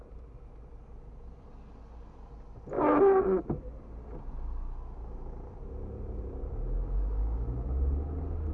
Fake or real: real